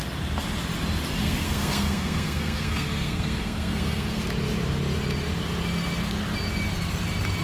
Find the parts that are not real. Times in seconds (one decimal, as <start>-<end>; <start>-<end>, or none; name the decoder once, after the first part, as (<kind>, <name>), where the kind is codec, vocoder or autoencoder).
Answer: 1.2-4.2 (codec, SNAC)